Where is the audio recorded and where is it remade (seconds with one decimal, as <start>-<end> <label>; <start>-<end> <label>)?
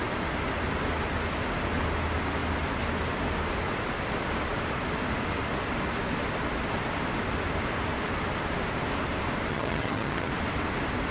0.0-9.5 recorded; 9.5-10.3 remade; 10.3-11.1 recorded